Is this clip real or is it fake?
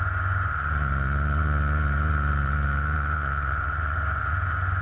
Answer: fake